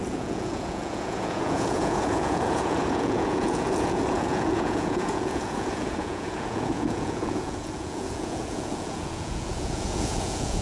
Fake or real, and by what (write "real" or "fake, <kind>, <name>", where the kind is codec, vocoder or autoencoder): fake, vocoder, Vocos